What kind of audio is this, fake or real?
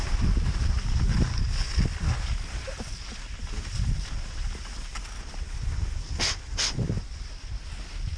real